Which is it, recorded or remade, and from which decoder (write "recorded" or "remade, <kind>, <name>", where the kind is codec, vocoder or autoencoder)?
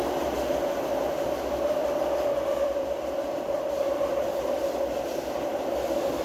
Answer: recorded